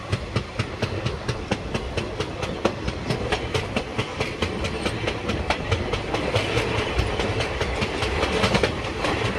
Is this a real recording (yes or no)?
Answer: yes